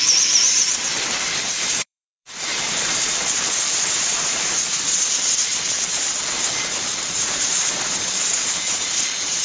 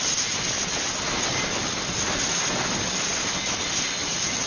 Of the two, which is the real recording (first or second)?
second